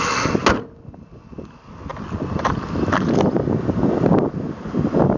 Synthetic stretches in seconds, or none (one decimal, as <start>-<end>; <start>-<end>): none